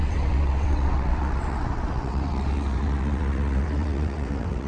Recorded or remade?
remade